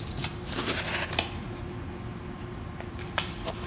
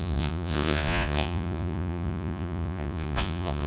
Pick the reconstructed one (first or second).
second